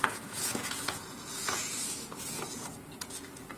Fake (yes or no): yes